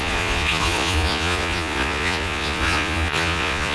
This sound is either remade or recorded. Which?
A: remade